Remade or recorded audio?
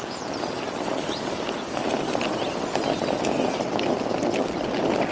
recorded